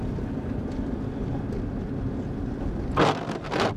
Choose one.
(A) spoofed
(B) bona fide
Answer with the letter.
B